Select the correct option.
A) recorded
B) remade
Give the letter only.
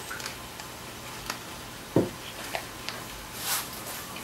A